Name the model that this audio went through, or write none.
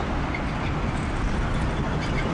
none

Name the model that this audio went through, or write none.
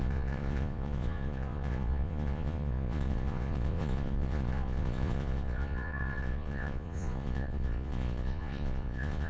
vocoder, Vocos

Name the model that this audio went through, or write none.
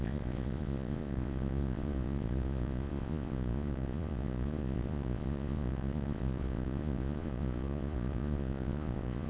vocoder, Vocos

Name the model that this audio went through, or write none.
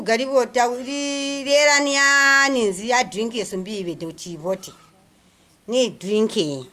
none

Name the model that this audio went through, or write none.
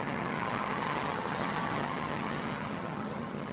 vocoder, HiFi-GAN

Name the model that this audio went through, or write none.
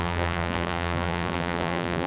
vocoder, BigVGAN v2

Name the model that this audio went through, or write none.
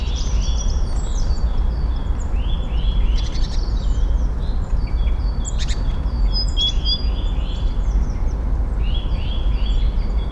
none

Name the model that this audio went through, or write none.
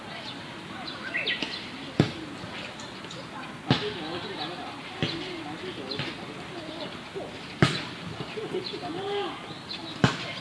none